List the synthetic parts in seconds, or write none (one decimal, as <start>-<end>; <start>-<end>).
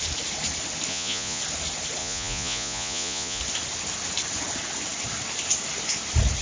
0.9-1.4; 2.0-3.4